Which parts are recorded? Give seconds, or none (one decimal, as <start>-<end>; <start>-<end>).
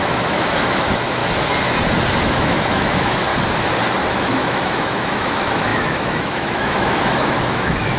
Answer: 1.2-2.2; 3.3-4.2